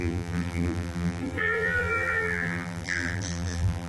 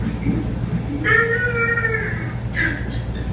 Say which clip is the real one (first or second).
second